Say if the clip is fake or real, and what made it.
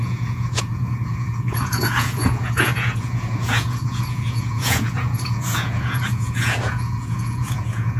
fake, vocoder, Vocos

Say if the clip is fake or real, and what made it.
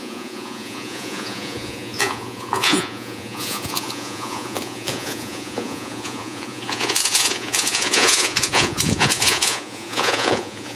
fake, vocoder, Vocos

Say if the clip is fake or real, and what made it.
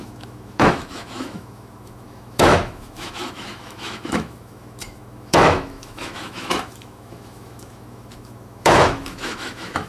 fake, autoencoder, DAC-VAE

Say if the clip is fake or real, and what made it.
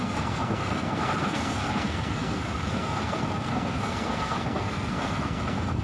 fake, codec, SNAC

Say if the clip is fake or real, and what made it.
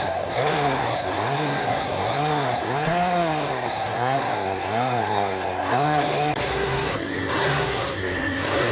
fake, codec, SNAC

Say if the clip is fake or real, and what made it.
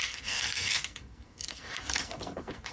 fake, codec, SNAC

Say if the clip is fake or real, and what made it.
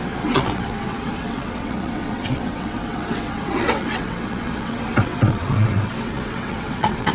fake, vocoder, WaveNeXt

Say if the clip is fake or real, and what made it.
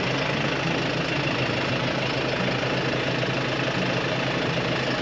real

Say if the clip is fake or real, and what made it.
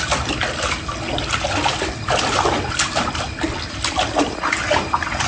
real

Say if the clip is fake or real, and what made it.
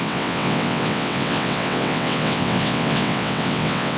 fake, vocoder, WaveNeXt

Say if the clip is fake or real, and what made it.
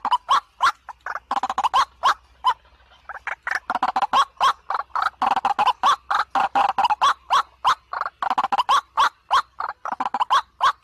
real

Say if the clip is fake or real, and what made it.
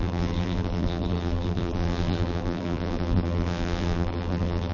fake, vocoder, BigVGAN v2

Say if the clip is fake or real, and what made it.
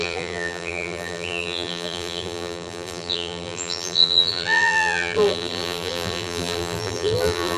fake, vocoder, BigVGAN v2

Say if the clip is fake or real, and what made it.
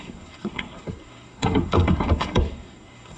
fake, codec, SNAC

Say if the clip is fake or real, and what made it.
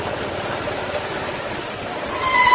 real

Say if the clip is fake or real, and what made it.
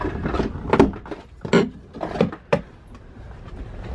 real